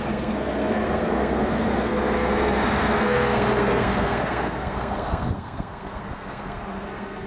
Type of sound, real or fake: fake